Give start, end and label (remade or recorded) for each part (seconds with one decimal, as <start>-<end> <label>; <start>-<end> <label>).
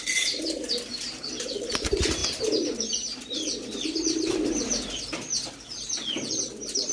0.0-6.9 recorded